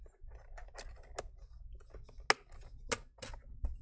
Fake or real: real